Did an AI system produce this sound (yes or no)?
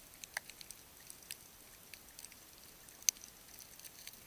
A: no